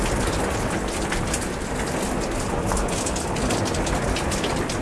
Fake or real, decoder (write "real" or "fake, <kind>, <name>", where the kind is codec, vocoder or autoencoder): real